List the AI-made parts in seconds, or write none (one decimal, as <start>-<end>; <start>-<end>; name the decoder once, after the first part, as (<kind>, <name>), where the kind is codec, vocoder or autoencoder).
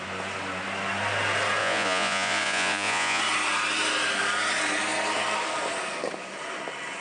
1.6-3.2 (vocoder, Vocos)